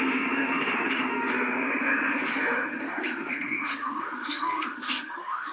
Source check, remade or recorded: remade